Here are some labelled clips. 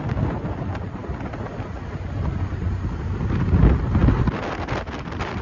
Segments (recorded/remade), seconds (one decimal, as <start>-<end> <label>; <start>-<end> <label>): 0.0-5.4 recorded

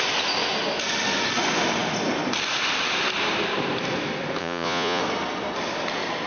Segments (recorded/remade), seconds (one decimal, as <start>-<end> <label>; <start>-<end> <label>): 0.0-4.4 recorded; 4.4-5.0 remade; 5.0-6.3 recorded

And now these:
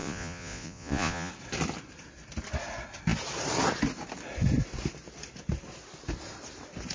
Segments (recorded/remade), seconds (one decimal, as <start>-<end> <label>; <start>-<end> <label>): 0.0-1.3 remade; 1.3-6.9 recorded

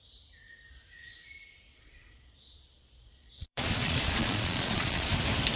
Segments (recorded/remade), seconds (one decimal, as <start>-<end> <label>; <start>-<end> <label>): 0.0-1.7 recorded; 1.7-5.1 remade; 5.1-5.6 recorded